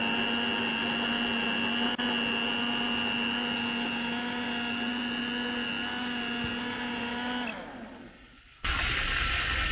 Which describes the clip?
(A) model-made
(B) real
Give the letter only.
B